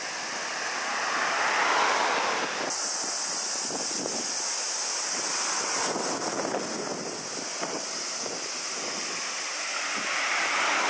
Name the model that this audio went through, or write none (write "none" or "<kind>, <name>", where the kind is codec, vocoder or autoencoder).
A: none